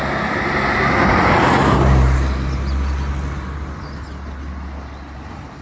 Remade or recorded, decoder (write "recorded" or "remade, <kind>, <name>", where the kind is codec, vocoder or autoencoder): recorded